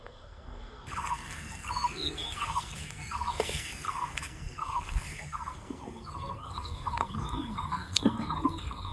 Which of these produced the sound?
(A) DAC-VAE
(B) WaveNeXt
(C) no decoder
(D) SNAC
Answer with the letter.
D